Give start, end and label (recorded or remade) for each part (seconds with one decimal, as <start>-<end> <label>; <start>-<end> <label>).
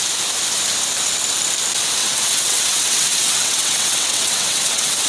0.0-2.0 recorded; 2.0-5.1 remade